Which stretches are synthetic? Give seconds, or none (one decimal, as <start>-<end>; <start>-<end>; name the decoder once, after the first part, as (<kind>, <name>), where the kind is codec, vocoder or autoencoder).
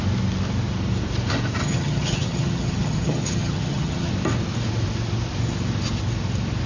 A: 1.6-4.1 (vocoder, HiFi-GAN)